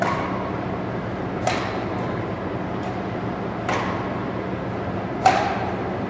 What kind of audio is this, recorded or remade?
recorded